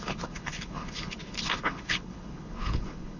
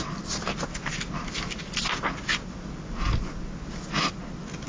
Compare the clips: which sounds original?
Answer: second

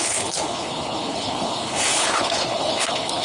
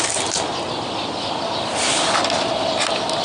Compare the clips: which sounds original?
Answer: second